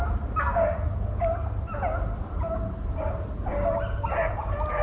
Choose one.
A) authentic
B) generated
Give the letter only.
A